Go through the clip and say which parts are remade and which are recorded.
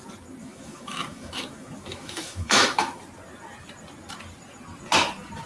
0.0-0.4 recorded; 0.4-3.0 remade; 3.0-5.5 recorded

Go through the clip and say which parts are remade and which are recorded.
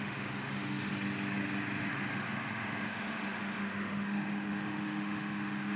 0.0-0.9 remade; 0.9-1.9 recorded; 1.9-5.8 remade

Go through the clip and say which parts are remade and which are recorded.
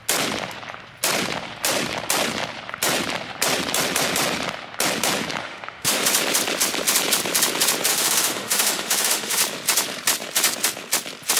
0.0-5.4 recorded; 5.4-6.0 remade; 6.0-7.9 recorded; 7.9-9.4 remade; 9.4-11.4 recorded